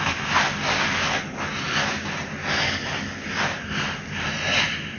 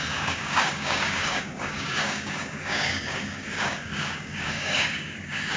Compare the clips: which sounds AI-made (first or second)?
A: second